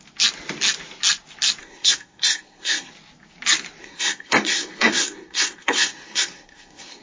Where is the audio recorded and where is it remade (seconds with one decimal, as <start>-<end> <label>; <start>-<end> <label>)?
0.0-1.6 recorded; 1.6-2.9 remade; 2.9-3.8 recorded; 3.8-7.0 remade